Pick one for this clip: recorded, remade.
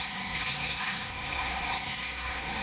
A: remade